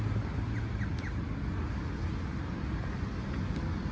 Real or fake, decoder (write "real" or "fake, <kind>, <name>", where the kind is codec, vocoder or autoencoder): real